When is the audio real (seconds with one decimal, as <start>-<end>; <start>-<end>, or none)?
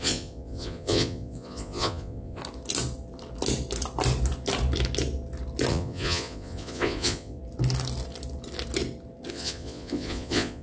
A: 2.4-5.7; 7.4-9.3